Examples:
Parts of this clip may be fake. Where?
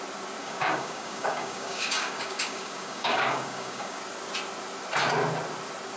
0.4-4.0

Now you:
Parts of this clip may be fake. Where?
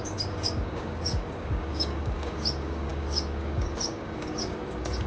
0.0-5.1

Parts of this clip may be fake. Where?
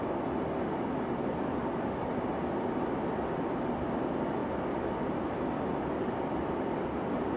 none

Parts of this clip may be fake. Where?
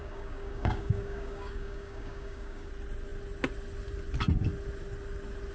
0.0-2.7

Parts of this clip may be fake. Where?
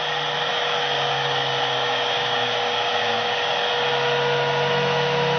0.5-3.7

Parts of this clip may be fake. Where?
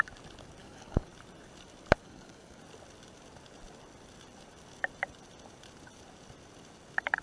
0.6-1.1; 2.0-2.6